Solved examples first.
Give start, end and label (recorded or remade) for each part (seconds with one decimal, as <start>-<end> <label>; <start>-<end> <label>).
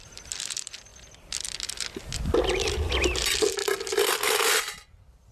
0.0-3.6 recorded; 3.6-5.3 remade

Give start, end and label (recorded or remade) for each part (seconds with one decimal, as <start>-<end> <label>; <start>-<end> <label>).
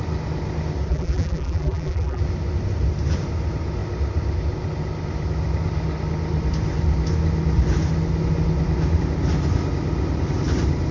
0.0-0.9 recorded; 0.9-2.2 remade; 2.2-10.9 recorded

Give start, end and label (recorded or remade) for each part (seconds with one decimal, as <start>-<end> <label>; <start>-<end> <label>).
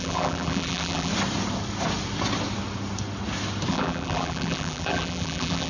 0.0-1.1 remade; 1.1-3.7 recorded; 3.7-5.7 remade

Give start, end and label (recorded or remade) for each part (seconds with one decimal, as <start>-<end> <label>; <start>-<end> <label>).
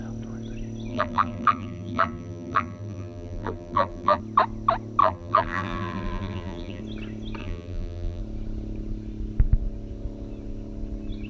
0.0-0.9 recorded; 0.9-4.2 remade; 4.2-5.0 recorded; 5.0-6.8 remade; 6.8-7.4 recorded; 7.4-8.2 remade; 8.2-11.3 recorded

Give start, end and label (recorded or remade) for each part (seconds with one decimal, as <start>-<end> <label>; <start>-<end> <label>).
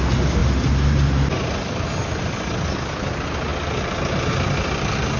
0.0-0.4 recorded; 0.4-1.2 remade; 1.2-5.2 recorded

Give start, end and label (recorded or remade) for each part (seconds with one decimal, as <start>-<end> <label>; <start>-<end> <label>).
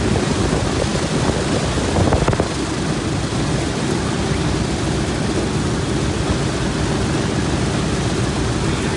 0.0-9.0 recorded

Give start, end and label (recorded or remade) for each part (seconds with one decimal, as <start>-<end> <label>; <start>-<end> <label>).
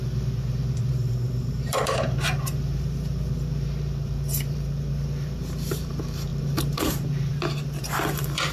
0.0-8.5 remade